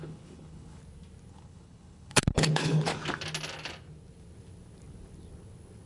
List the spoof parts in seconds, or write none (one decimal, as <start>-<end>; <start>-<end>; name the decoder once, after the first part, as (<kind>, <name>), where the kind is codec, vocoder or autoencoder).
0.0-0.8 (codec, HILCodec); 1.3-2.9